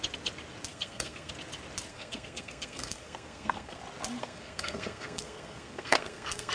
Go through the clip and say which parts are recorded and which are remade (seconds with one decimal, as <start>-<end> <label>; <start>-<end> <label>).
0.0-0.7 recorded; 0.7-1.3 remade; 1.3-1.9 recorded; 1.9-3.8 remade; 3.8-4.2 recorded; 4.2-6.5 remade